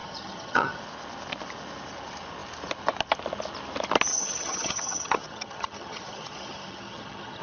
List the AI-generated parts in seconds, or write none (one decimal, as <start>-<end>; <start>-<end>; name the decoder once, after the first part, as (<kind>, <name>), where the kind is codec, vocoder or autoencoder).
0.0-0.8 (vocoder, HiFi-GAN); 4.1-7.4